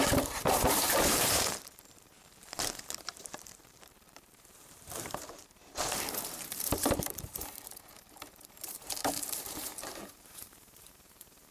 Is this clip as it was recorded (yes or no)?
no